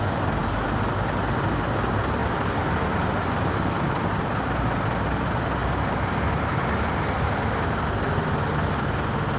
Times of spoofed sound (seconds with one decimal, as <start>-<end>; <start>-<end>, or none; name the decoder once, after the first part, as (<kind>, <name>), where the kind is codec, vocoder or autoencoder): 2.2-3.7 (vocoder, BigVGAN v2); 5.6-7.1